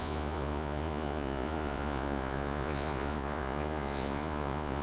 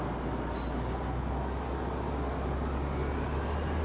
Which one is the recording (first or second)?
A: second